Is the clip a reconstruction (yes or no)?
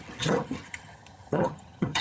yes